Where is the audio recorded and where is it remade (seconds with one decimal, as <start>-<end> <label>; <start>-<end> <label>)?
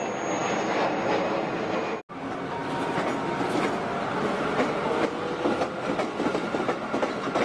0.0-7.4 recorded